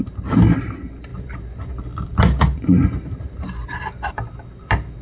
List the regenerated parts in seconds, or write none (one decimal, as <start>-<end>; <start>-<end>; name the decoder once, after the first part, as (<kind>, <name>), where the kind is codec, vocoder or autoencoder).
1.1-4.1 (vocoder, BigVGAN v2)